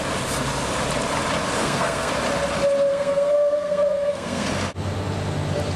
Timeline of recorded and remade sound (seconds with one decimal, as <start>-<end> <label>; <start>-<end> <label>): 0.0-1.6 recorded; 1.6-2.1 remade; 2.1-2.9 recorded; 2.9-4.5 remade; 4.5-5.8 recorded